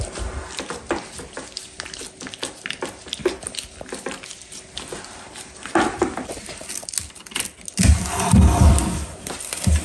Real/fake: real